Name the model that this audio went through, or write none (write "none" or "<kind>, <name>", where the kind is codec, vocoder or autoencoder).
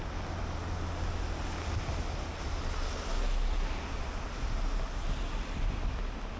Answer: none